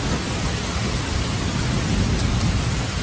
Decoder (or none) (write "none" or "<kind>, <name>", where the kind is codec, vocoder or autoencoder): none